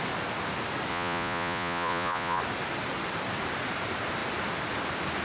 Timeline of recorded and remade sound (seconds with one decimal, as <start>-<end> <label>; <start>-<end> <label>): 0.0-0.9 recorded; 0.9-2.4 remade; 2.4-5.2 recorded